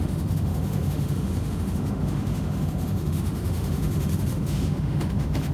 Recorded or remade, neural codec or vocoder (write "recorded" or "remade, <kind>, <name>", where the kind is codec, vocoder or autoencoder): remade, autoencoder, DAC-VAE